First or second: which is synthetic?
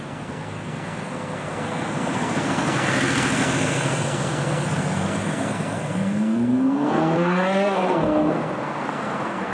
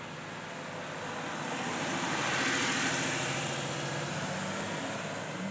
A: first